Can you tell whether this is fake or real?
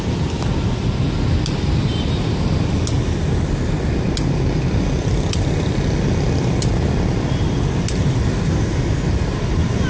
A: real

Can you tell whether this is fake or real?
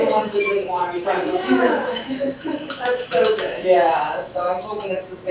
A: fake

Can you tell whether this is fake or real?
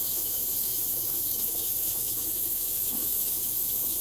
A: fake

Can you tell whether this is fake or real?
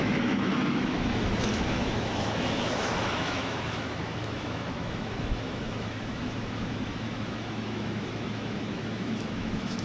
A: fake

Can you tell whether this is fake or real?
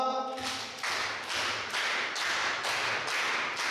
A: real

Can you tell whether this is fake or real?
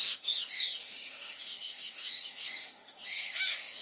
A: fake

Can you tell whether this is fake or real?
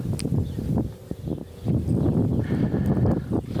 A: real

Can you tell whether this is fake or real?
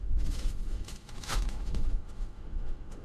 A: fake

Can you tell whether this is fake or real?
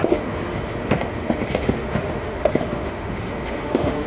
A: fake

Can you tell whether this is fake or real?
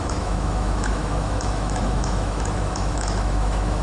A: fake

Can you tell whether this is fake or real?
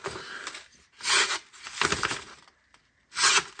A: real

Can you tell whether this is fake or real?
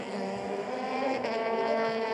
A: fake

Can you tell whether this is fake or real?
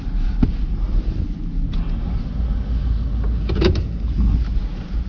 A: real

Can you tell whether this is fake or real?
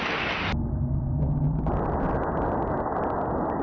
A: real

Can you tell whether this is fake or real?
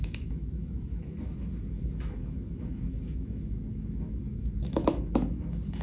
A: fake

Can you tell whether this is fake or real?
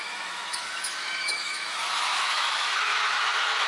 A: fake